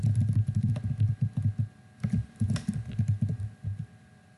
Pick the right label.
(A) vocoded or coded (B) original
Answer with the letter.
B